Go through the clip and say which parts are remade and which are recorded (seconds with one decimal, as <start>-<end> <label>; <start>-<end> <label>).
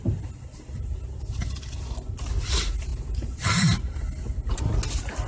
0.0-5.3 recorded